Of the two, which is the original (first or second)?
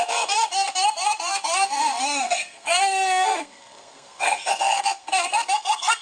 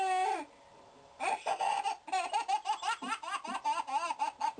second